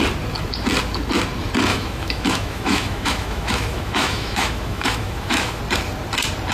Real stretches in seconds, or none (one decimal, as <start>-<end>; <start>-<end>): 0.0-1.7; 5.6-6.5